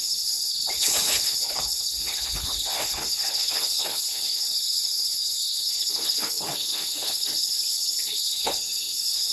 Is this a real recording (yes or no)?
no